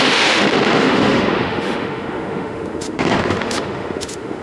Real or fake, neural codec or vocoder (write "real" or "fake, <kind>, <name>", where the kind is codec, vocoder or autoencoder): fake, autoencoder, DAC-VAE